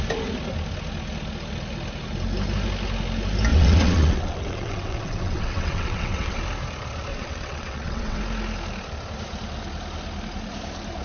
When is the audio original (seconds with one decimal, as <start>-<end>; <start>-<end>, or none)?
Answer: 0.0-3.5; 6.4-7.1; 8.2-11.0

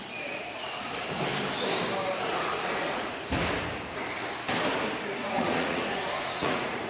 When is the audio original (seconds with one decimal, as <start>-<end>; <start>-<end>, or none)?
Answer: 0.0-2.3; 3.2-5.2